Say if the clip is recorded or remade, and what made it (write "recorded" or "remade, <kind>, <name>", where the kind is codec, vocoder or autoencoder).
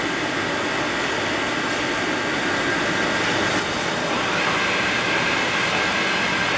recorded